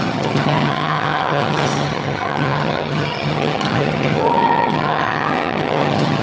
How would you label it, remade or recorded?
remade